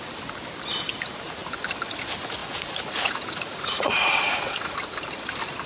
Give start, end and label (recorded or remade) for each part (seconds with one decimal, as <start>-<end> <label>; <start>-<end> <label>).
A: 0.0-2.4 recorded; 2.4-4.8 remade; 4.8-5.7 recorded